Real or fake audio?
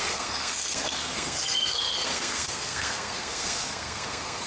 fake